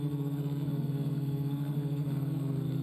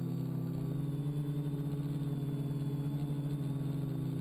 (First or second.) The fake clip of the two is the first